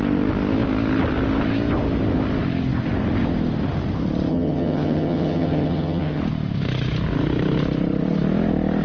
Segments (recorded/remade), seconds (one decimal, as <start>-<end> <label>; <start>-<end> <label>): 0.0-4.3 recorded; 4.3-6.2 remade; 6.2-8.8 recorded